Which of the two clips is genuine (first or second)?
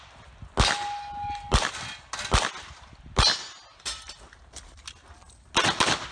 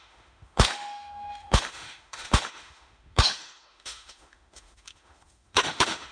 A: first